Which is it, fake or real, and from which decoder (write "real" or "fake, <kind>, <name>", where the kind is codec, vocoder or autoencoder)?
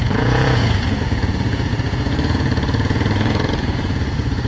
fake, vocoder, Vocos